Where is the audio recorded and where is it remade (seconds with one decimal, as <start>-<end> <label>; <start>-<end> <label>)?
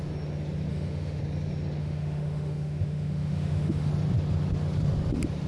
0.0-0.7 recorded; 0.7-1.2 remade; 1.2-1.8 recorded; 1.8-3.9 remade; 3.9-5.5 recorded